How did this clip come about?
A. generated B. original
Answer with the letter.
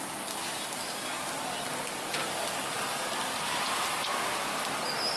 B